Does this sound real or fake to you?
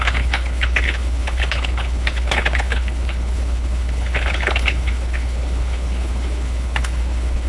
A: fake